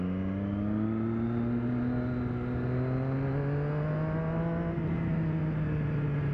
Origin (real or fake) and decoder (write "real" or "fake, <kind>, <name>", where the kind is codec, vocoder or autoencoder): real